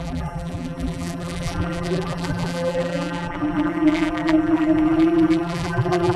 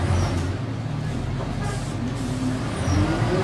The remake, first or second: first